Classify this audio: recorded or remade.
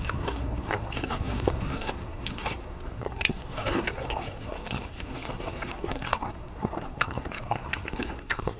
remade